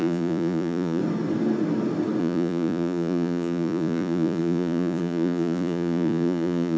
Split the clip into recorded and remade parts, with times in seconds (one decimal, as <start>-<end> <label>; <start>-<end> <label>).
0.0-1.0 remade; 1.0-2.2 recorded; 2.2-6.8 remade